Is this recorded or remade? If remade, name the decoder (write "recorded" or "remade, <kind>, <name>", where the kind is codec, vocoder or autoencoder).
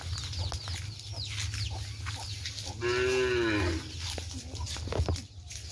recorded